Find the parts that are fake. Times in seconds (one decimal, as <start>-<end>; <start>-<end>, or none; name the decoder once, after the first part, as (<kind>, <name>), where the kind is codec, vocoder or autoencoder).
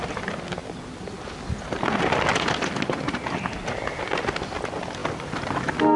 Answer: none